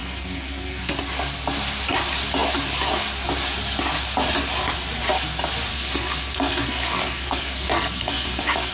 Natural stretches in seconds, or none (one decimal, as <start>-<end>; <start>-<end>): 0.9-5.7